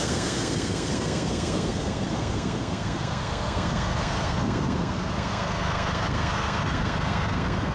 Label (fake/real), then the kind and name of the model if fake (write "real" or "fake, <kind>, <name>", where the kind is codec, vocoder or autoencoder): fake, codec, SNAC